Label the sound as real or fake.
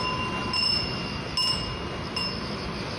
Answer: real